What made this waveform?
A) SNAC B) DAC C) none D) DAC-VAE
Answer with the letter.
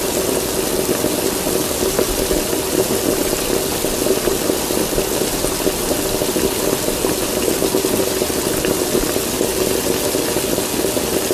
C